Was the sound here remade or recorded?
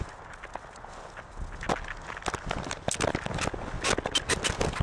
recorded